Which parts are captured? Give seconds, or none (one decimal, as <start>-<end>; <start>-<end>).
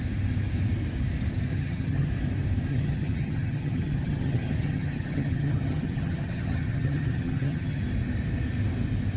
0.0-1.5; 2.1-2.7; 7.8-9.2